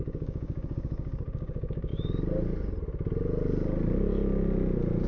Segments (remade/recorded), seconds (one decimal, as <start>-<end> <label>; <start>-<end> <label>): 0.0-1.9 remade; 1.9-5.1 recorded